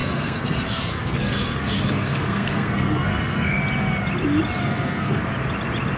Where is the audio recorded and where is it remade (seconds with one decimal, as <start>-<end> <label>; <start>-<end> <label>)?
0.0-3.6 remade; 3.6-4.6 recorded; 4.6-5.2 remade; 5.2-6.0 recorded